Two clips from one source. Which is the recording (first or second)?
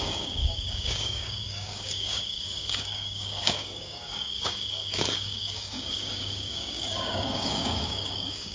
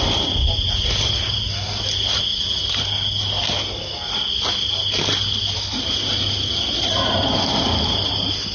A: second